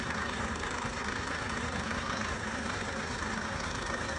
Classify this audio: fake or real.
fake